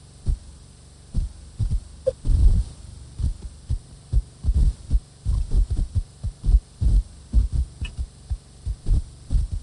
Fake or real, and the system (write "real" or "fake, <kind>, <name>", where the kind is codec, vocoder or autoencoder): real